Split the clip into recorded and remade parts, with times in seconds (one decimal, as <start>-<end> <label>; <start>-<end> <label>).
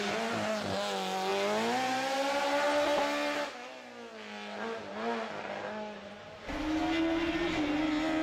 0.0-8.2 recorded